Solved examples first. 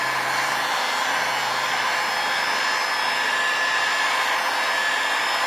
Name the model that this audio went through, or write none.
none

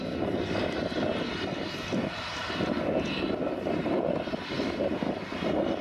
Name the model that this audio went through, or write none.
none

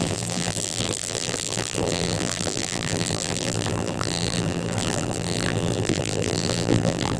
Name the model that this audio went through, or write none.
vocoder, BigVGAN v2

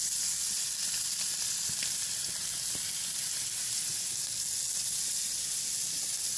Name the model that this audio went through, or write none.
none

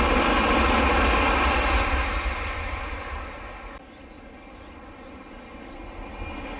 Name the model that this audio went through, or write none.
none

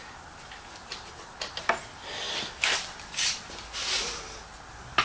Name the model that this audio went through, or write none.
none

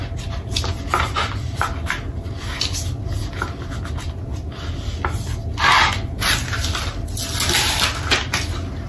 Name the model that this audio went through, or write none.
none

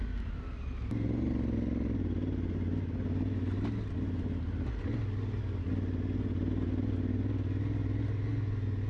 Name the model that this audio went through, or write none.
none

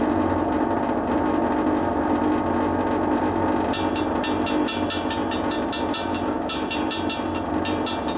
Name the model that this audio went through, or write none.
none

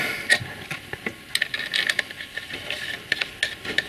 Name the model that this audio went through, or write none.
none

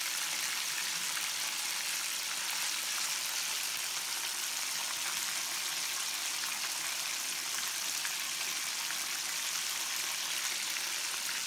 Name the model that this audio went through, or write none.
none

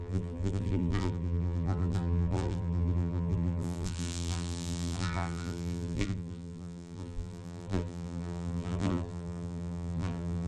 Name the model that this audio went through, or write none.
vocoder, BigVGAN v2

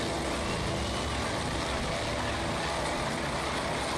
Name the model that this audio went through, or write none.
none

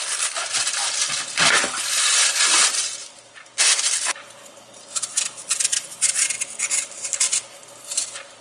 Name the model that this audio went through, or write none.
vocoder, BigVGAN v2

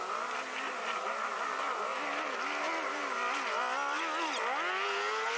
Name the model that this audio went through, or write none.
none